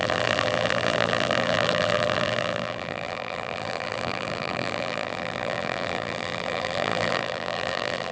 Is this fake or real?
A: fake